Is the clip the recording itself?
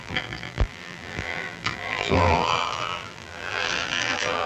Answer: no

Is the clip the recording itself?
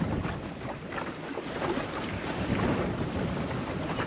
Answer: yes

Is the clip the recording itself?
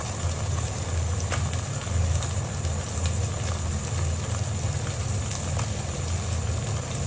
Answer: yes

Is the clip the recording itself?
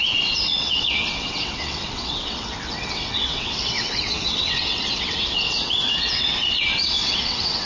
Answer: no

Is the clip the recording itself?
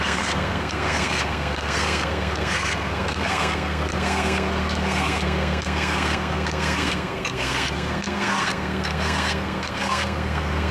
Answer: no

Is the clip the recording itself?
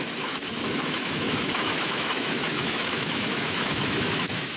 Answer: no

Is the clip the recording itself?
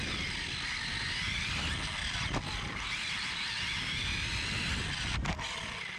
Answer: yes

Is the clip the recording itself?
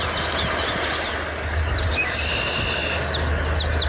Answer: yes